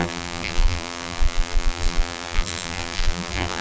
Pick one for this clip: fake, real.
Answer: fake